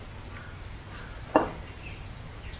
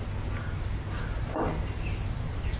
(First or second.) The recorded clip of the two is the second